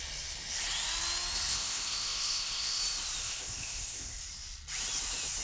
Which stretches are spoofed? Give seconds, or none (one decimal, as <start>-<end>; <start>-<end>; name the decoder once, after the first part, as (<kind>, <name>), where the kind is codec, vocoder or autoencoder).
1.5-2.8 (codec, ZipCodec); 3.2-4.2